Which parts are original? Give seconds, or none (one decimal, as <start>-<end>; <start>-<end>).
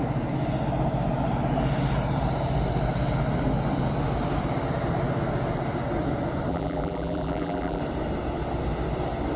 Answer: 0.0-6.5; 7.8-9.4